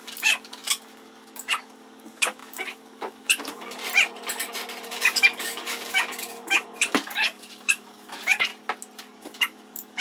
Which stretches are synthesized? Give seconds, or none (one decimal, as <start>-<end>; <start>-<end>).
0.0-3.8; 4.9-8.5; 9.0-10.0